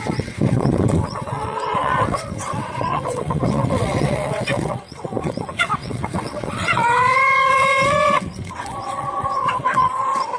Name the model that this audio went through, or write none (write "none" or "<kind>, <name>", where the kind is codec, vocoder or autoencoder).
vocoder, WaveNeXt